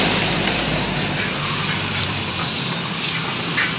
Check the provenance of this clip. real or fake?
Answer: fake